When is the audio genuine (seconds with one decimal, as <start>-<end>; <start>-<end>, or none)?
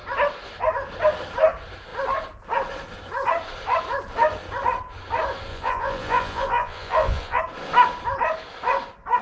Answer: 0.0-5.5; 7.4-9.2